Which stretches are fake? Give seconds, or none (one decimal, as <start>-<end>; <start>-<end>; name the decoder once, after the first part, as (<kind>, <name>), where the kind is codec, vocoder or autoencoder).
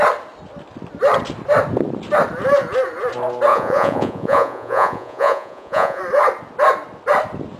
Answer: 3.5-6.0 (vocoder, Vocos)